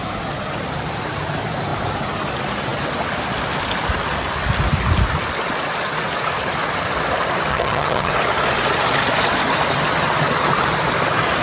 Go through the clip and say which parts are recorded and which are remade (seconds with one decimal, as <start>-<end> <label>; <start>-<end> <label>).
0.0-7.5 recorded; 7.5-8.1 remade; 8.1-11.4 recorded

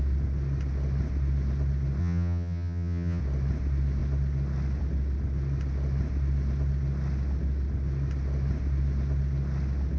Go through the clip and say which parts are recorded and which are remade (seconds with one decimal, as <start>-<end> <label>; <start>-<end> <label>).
0.0-2.0 recorded; 2.0-3.2 remade; 3.2-10.0 recorded

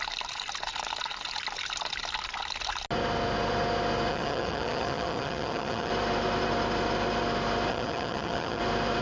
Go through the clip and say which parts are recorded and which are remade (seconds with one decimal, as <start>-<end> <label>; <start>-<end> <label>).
0.0-4.1 recorded; 4.1-5.9 remade; 5.9-7.7 recorded; 7.7-8.6 remade; 8.6-9.0 recorded

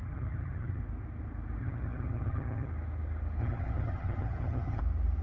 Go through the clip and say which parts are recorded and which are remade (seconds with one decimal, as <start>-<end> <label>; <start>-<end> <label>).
0.0-0.8 remade; 0.8-1.6 recorded; 1.6-2.7 remade; 2.7-3.4 recorded; 3.4-4.8 remade; 4.8-5.2 recorded

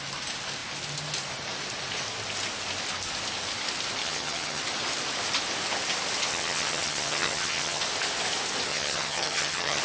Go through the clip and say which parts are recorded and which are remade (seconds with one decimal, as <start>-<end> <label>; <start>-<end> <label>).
0.0-4.0 recorded; 4.0-4.6 remade; 4.6-6.3 recorded; 6.3-7.8 remade; 7.8-8.7 recorded; 8.7-9.8 remade

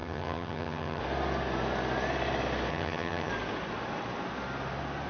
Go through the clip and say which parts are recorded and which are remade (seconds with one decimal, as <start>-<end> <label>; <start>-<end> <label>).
0.0-1.0 remade; 1.0-2.7 recorded; 2.7-3.3 remade; 3.3-5.1 recorded

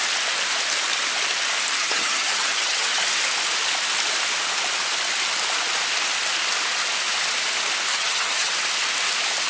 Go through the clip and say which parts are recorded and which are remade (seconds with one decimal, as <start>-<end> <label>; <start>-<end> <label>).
0.0-1.8 recorded; 1.8-3.0 remade; 3.0-7.9 recorded; 7.9-8.5 remade; 8.5-9.5 recorded

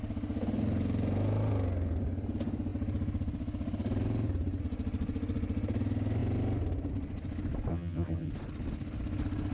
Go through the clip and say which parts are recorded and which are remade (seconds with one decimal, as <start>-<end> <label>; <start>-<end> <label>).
0.0-7.7 recorded; 7.7-8.3 remade; 8.3-9.5 recorded